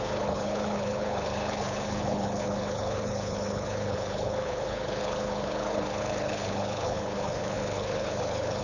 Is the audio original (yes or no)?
no